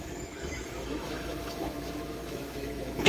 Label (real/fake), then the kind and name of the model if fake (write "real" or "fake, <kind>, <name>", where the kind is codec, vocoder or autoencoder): fake, autoencoder, DAC-VAE